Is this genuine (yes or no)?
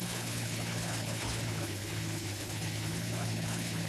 no